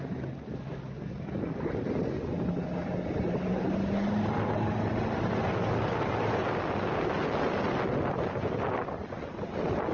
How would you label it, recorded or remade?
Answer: recorded